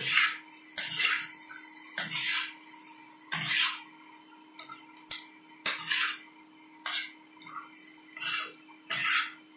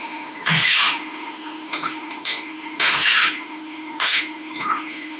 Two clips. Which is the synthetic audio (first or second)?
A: second